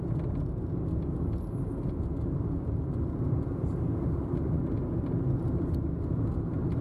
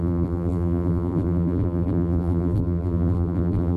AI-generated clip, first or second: second